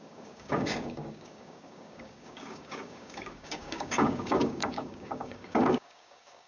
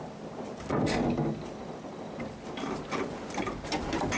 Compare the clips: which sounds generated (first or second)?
first